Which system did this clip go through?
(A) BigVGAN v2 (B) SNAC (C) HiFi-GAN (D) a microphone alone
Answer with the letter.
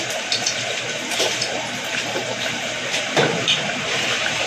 A